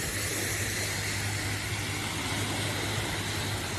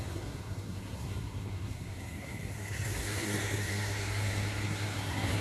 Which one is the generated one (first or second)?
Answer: second